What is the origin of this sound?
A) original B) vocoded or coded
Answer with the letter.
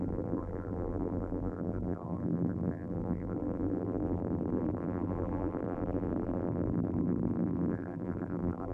B